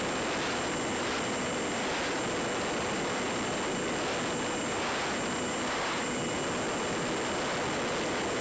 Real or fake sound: real